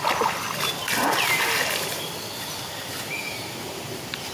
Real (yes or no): yes